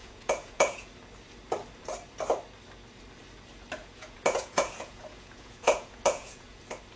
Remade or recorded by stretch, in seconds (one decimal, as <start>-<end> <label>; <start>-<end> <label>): 0.0-0.9 remade; 0.9-3.8 recorded; 3.8-6.6 remade; 6.6-7.0 recorded